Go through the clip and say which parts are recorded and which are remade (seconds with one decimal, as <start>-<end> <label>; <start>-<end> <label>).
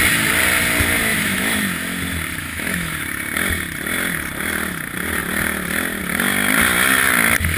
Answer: 0.0-1.1 recorded; 1.1-1.6 remade; 1.6-2.4 recorded; 2.4-2.9 remade; 2.9-7.6 recorded